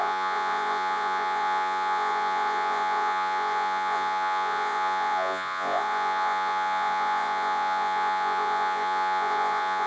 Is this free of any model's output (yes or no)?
no